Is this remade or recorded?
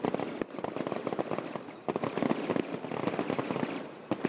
recorded